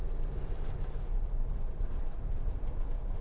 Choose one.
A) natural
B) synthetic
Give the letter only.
B